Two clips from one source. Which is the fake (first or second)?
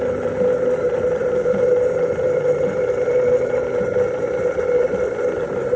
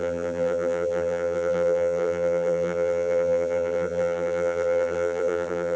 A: second